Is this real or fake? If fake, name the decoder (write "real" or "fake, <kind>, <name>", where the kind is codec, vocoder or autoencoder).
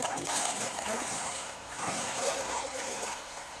fake, codec, SNAC